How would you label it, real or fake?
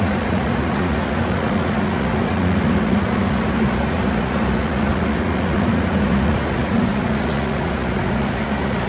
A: fake